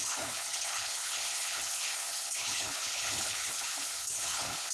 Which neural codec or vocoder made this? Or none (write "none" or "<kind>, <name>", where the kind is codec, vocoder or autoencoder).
codec, HILCodec